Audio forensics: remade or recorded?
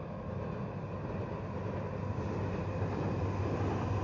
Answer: recorded